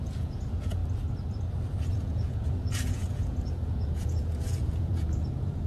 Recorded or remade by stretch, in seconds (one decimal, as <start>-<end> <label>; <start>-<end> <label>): 0.0-0.8 remade; 0.8-1.9 recorded; 1.9-5.7 remade